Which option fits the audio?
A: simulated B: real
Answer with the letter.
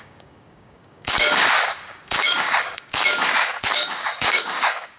A